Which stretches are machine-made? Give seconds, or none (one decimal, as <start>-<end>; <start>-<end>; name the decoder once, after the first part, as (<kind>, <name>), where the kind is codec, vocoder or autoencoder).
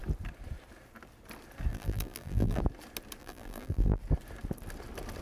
1.7-2.6 (vocoder, BigVGAN v2); 3.2-4.0